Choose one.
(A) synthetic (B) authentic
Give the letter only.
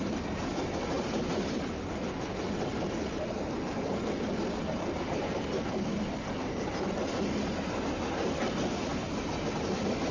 B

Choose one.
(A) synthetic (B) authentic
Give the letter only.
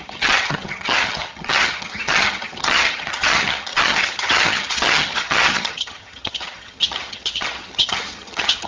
A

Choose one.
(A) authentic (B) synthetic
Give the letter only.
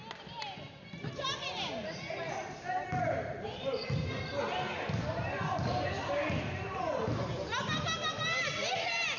A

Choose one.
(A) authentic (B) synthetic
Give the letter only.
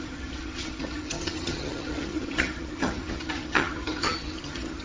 B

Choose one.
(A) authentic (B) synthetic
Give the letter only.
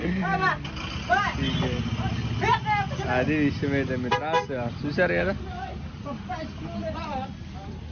A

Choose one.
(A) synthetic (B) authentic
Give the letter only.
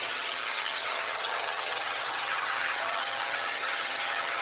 A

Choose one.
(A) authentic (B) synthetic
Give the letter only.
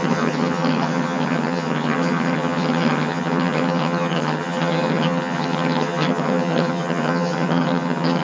B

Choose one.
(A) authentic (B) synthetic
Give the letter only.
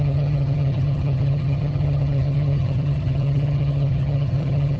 B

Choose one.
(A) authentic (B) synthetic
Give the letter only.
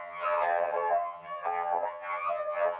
B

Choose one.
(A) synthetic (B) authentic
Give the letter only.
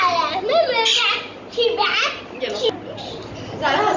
B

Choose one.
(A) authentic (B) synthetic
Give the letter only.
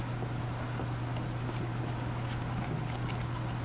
A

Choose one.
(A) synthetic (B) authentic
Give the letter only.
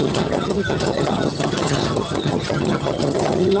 A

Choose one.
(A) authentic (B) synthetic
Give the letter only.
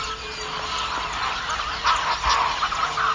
A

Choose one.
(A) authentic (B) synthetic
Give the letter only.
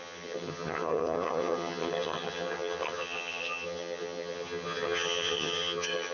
B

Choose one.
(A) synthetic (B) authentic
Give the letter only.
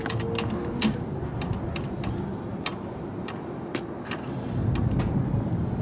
B